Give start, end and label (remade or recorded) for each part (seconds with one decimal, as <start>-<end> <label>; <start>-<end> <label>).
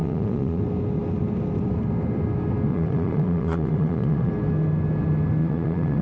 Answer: 0.0-0.6 remade; 0.6-2.7 recorded; 2.7-4.3 remade; 4.3-5.4 recorded; 5.4-6.0 remade